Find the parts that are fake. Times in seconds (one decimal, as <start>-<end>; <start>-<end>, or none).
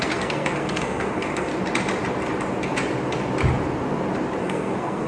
0.0-1.5; 4.4-5.1